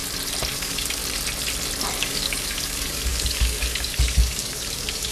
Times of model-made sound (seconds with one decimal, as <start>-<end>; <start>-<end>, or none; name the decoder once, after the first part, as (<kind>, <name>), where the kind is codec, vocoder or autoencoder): 0.5-1.0 (codec, DAC); 2.0-5.1